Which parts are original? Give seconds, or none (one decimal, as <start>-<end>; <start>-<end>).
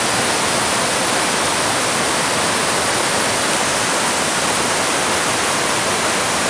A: 0.0-6.5